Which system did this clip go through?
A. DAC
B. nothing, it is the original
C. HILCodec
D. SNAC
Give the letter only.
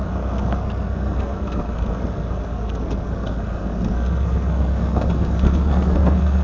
D